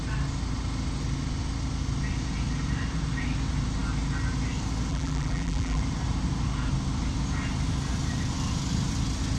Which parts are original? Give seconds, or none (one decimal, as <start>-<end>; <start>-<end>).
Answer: 0.0-4.9; 5.8-9.4